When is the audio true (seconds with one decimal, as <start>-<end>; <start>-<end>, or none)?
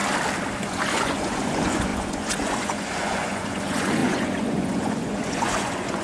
0.0-0.6